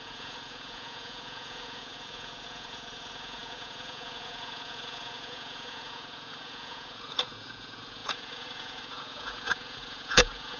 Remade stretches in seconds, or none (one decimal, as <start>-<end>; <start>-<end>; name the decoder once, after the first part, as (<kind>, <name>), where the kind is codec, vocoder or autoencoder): 0.0-10.6 (vocoder, Vocos)

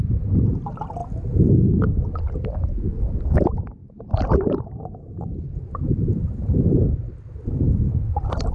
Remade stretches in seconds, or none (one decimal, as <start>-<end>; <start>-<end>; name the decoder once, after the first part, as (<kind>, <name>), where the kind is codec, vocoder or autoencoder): 1.0-1.5 (vocoder, BigVGAN v2); 3.8-7.9

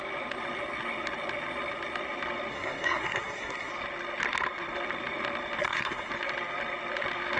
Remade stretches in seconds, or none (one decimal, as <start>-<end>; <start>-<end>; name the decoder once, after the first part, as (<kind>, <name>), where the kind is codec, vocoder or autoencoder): 2.5-3.7 (codec, SNAC); 5.6-6.1

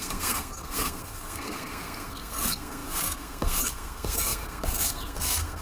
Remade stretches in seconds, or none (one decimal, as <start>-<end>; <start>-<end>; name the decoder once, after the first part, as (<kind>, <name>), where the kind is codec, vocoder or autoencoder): 0.0-5.6 (codec, SNAC)

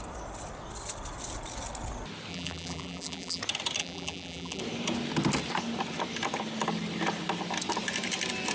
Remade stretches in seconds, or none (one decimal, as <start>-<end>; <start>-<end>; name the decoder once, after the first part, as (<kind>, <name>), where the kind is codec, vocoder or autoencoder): 2.3-3.4 (vocoder, BigVGAN v2); 3.8-4.6

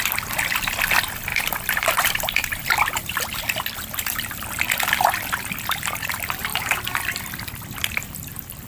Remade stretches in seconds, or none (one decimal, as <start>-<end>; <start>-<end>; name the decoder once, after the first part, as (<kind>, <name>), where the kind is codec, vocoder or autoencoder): 1.3-3.1 (vocoder, BigVGAN v2); 6.5-7.4

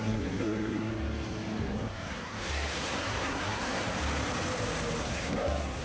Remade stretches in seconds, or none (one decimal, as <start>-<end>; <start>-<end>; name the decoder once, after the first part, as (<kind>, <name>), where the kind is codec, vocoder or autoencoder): 0.0-0.9 (codec, SNAC); 1.6-3.8; 5.0-5.8

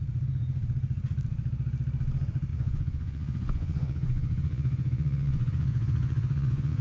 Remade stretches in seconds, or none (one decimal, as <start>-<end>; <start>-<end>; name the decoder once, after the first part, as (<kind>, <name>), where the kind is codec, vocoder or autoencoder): 2.5-6.8 (vocoder, Vocos)